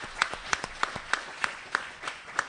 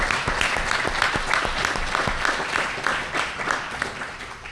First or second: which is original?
second